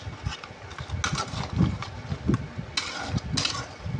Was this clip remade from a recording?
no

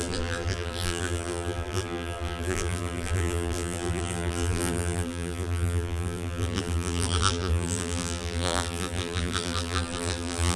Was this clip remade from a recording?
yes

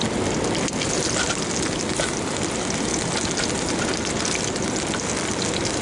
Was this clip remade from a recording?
no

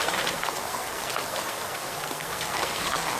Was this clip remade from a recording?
yes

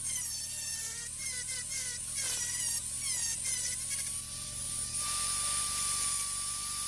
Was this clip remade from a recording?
yes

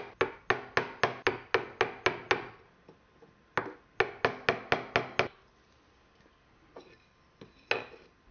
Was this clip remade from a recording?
no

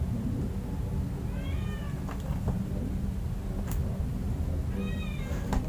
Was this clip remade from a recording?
no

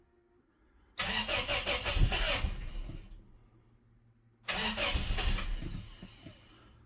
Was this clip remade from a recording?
no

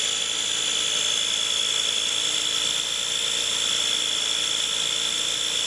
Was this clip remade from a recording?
no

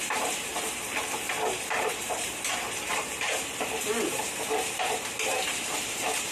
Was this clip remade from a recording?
yes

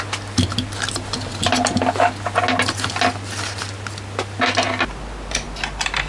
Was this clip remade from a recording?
no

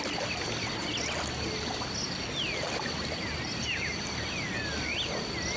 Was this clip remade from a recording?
no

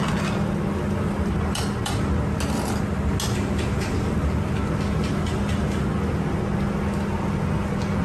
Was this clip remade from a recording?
no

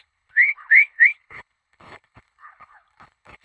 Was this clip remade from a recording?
yes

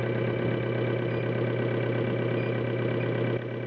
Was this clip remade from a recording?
no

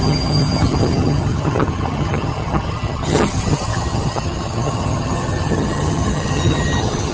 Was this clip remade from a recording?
yes